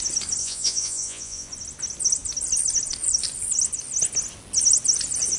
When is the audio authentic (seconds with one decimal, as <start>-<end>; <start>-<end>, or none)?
0.0-0.4; 1.5-5.4